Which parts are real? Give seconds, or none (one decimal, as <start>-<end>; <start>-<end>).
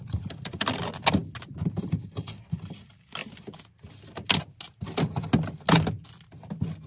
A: 0.0-6.9